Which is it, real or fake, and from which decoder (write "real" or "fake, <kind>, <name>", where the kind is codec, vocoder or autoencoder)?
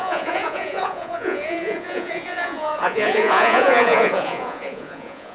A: fake, vocoder, Vocos